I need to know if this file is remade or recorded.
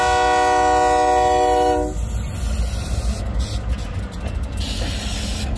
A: recorded